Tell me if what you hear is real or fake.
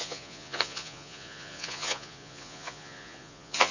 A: fake